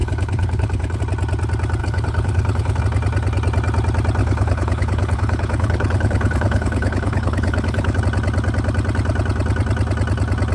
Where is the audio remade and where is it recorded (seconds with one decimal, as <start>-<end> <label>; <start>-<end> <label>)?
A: 0.0-1.0 remade; 1.0-1.8 recorded; 1.8-2.8 remade; 2.8-4.2 recorded; 4.2-8.0 remade; 8.0-10.5 recorded

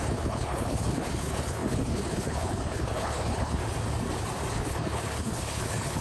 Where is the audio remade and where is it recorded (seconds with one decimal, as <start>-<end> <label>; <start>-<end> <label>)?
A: 0.0-3.6 remade; 3.6-4.5 recorded; 4.5-6.0 remade

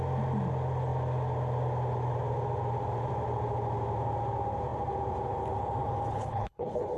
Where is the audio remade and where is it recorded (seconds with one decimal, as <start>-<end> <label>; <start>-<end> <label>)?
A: 0.0-6.1 recorded; 6.1-7.0 remade